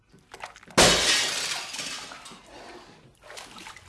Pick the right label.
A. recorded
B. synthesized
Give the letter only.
A